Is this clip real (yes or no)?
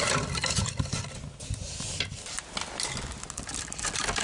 yes